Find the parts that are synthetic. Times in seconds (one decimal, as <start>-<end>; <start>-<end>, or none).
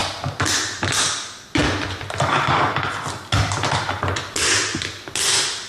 none